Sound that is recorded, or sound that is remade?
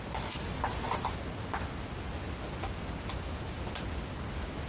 recorded